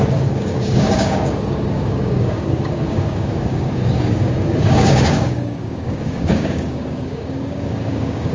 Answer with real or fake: fake